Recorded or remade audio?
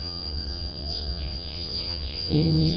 remade